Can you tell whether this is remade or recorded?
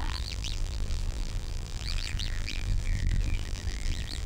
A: remade